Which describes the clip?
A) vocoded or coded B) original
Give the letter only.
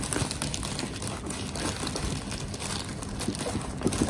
B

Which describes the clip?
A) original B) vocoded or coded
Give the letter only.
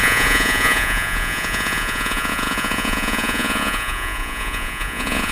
B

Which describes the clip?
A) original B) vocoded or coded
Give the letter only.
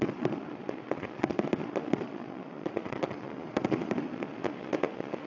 B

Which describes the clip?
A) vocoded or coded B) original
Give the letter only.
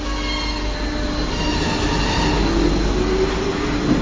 B